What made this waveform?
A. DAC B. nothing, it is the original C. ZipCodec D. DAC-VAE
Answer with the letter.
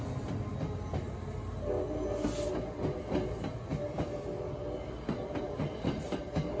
B